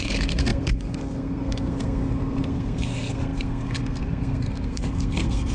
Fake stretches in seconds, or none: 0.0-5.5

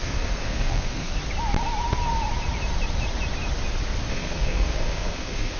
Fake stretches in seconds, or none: 0.0-1.1; 4.1-5.6

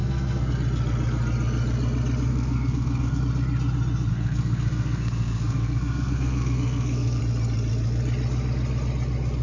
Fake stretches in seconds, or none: 0.0-0.5; 2.3-3.2; 4.1-7.2

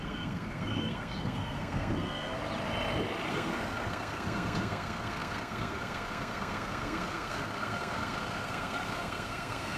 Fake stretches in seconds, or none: 0.0-2.4; 3.3-9.8

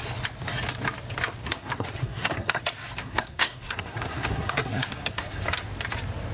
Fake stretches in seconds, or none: 1.4-2.6; 3.0-5.4

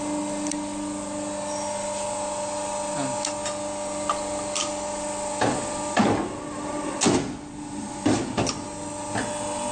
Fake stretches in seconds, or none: none

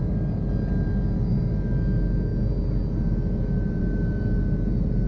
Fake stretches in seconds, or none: none